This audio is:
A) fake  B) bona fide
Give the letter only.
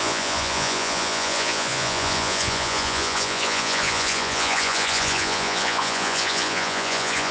A